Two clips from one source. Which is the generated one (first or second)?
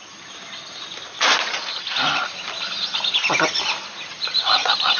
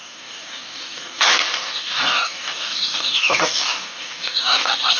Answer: second